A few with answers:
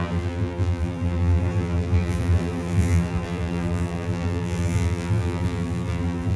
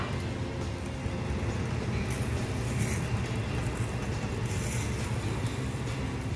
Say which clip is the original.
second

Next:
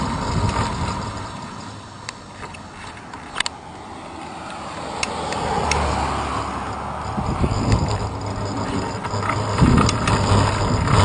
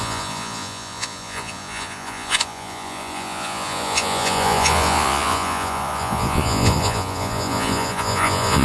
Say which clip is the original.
first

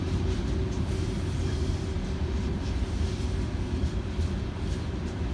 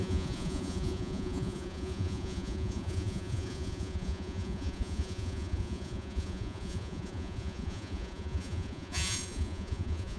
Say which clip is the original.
first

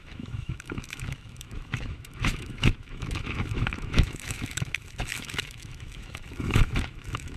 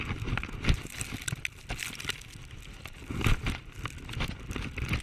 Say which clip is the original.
second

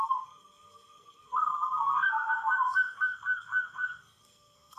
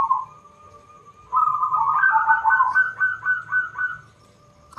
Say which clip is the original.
second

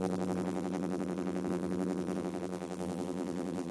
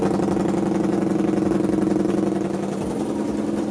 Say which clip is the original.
second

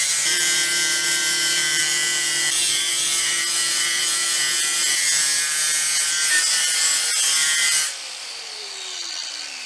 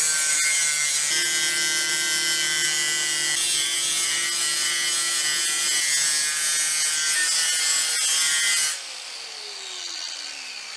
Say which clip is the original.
second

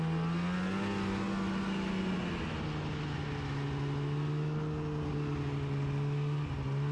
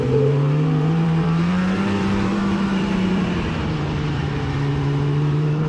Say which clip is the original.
first